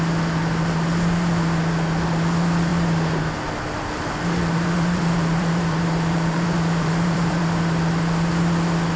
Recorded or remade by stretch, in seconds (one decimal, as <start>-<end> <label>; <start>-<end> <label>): 0.0-2.7 recorded; 2.7-7.4 remade; 7.4-9.0 recorded